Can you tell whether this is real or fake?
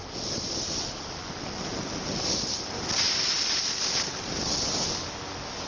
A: real